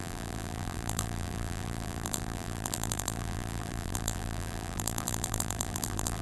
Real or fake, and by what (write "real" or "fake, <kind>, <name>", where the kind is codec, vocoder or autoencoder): fake, vocoder, BigVGAN v2